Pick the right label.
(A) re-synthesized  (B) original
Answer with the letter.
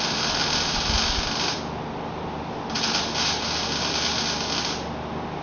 B